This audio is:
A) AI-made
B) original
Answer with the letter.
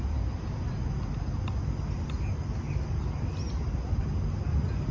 B